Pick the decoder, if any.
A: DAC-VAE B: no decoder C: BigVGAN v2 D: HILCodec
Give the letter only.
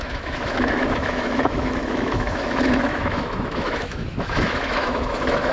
A